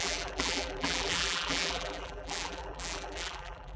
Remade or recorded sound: remade